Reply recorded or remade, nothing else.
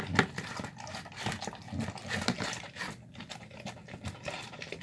recorded